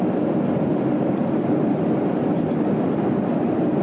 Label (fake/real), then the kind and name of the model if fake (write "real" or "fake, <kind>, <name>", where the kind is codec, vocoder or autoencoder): fake, vocoder, BigVGAN v2